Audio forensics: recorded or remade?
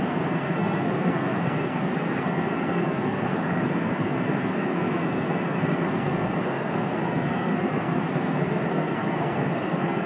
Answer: remade